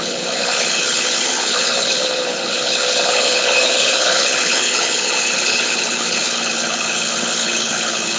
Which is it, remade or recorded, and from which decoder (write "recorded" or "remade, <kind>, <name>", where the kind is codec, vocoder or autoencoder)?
remade, codec, HILCodec